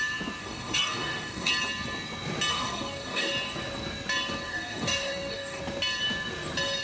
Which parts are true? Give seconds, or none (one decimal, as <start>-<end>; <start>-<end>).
0.0-0.4; 1.5-2.5; 3.3-4.5; 5.6-6.8